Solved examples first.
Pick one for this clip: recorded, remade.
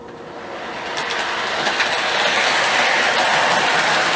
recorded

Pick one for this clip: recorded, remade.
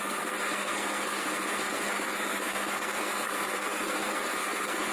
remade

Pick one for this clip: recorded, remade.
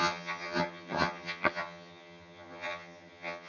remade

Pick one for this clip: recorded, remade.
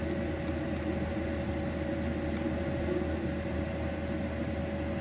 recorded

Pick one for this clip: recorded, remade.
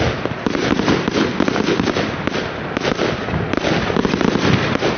recorded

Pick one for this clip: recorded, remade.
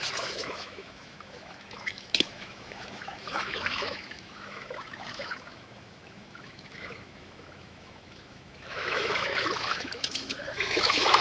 remade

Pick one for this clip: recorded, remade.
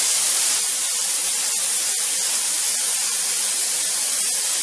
recorded